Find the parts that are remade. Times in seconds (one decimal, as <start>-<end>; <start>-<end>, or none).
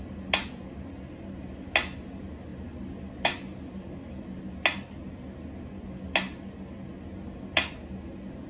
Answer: none